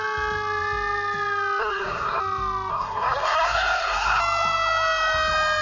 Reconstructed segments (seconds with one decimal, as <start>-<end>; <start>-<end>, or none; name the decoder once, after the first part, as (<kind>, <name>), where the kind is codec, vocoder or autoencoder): 1.6-2.2 (codec, SNAC); 2.7-4.2